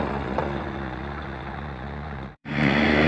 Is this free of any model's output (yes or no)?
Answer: no